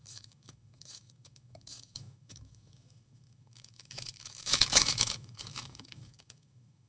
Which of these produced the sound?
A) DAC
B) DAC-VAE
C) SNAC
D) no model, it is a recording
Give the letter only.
B